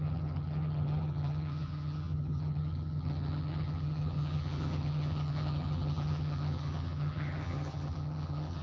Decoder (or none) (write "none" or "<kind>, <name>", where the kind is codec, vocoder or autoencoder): vocoder, HiFi-GAN